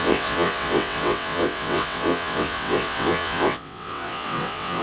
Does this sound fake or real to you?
fake